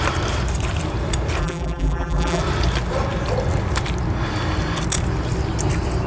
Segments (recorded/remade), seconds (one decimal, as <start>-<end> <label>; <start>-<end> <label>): 0.0-1.4 recorded; 1.4-2.4 remade; 2.4-6.1 recorded